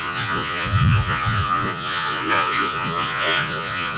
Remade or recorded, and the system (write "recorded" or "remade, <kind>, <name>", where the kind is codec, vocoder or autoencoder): remade, vocoder, Vocos